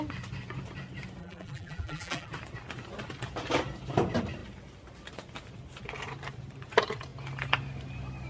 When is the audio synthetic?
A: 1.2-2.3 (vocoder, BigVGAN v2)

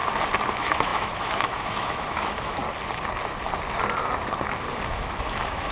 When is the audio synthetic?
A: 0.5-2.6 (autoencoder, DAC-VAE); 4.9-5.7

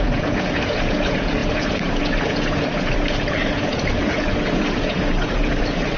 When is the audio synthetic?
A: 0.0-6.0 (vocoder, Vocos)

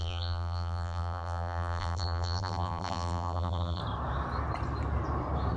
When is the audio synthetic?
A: 0.0-3.8 (vocoder, BigVGAN v2)